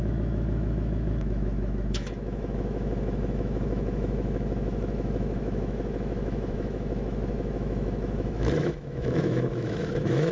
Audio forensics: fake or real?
fake